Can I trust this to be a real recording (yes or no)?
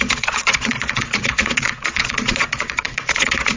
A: no